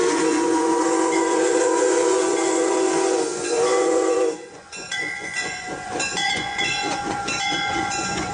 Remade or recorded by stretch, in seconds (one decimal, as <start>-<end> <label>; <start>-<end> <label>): 0.0-8.3 remade